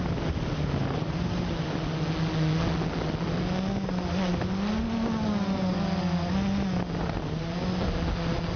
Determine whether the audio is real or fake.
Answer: real